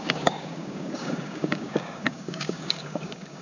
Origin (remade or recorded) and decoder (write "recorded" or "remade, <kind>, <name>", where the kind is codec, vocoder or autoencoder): remade, codec, DAC